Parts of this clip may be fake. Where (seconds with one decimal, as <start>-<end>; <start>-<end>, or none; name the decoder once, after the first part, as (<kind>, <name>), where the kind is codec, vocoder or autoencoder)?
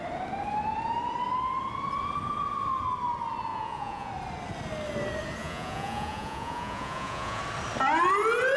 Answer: 3.5-4.1 (vocoder, Vocos); 5.4-7.4